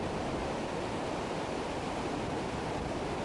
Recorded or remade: recorded